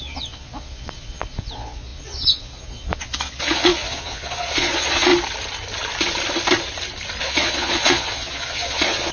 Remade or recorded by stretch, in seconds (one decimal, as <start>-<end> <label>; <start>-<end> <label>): 0.0-5.1 remade; 5.1-7.2 recorded; 7.2-9.1 remade